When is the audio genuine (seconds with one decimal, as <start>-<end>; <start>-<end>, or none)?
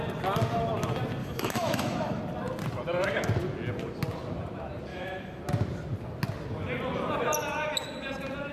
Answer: 0.0-1.2; 2.2-4.9; 5.4-8.5